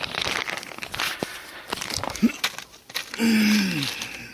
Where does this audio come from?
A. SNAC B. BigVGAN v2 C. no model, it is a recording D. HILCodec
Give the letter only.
C